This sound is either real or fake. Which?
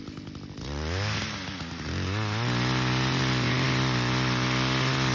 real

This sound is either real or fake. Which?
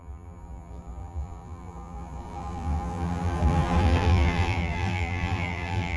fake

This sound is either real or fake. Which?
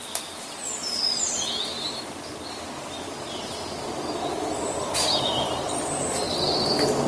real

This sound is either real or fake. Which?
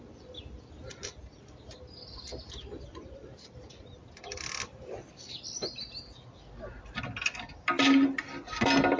real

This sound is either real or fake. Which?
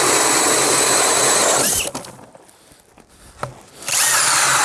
real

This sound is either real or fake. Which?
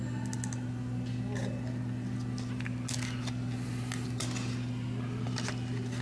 real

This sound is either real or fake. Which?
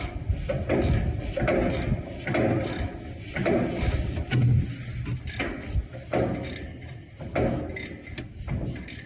real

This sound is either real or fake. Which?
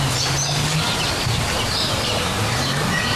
real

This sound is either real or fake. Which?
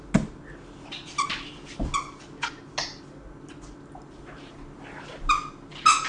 real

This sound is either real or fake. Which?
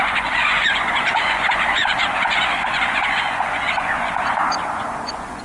fake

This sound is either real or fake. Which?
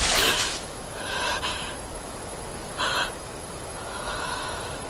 fake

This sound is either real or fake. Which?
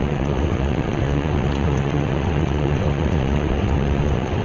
fake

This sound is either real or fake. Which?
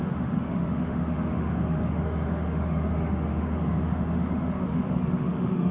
fake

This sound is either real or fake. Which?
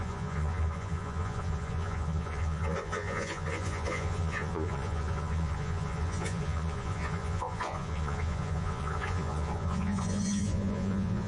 fake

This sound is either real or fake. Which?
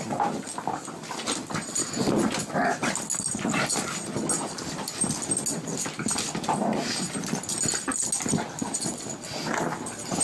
real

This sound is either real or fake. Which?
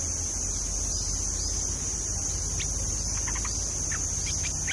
real